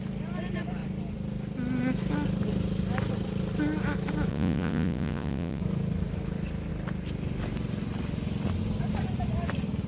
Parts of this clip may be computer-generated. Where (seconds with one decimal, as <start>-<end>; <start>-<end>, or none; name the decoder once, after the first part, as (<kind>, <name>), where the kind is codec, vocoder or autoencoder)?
4.3-5.6 (vocoder, Vocos)